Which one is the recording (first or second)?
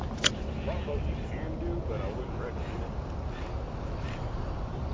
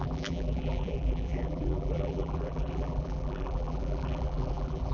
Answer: first